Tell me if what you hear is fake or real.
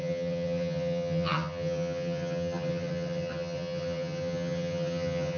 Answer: fake